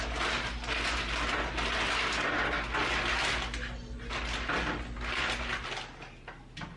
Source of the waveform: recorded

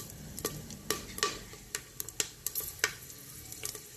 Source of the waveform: recorded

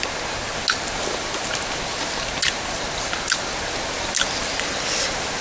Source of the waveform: recorded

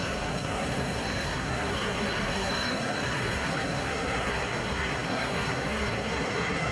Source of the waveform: remade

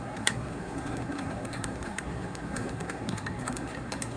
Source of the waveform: remade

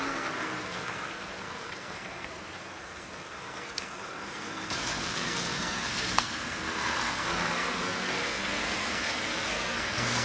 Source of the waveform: remade